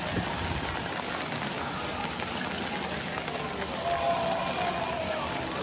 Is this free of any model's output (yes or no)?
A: yes